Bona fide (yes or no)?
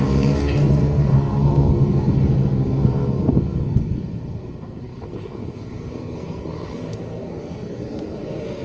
no